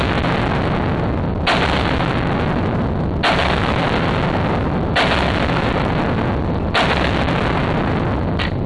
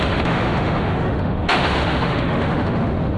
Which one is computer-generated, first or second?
second